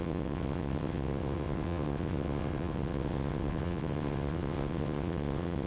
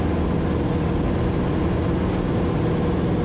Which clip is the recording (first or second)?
second